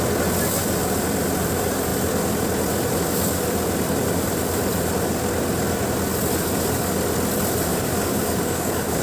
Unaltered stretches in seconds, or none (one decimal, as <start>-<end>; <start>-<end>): 0.0-7.7